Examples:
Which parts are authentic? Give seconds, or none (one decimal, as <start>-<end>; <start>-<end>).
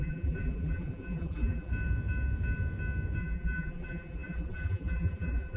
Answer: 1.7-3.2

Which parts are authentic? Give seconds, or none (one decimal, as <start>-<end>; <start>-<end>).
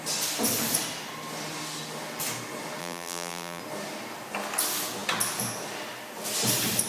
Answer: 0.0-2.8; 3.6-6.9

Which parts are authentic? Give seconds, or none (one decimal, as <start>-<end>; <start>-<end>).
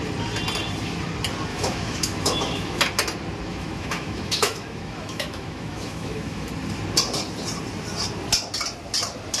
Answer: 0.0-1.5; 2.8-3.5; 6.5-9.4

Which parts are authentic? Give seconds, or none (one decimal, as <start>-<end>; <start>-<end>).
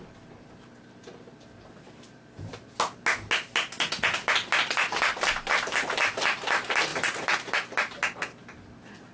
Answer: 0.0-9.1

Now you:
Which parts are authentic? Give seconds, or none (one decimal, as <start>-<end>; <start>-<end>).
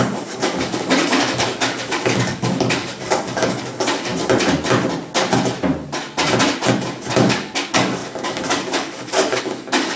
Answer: 4.1-7.1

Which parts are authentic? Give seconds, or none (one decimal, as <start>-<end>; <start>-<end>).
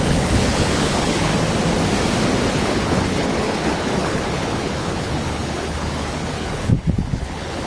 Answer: 1.3-2.5